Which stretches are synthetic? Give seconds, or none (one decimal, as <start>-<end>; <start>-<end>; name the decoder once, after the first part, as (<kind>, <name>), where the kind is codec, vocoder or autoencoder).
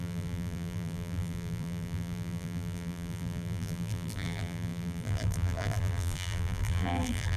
0.0-7.4 (vocoder, BigVGAN v2)